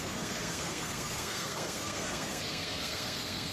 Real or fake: fake